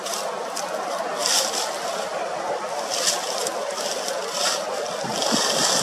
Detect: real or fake real